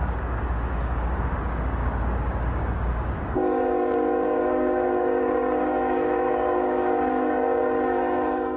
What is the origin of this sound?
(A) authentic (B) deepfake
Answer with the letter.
B